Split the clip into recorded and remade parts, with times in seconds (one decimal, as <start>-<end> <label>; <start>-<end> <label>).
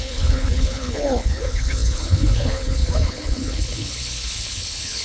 0.0-5.0 remade